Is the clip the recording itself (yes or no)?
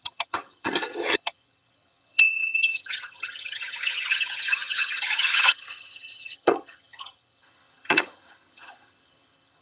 no